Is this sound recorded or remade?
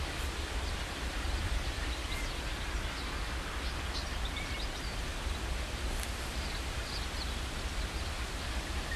recorded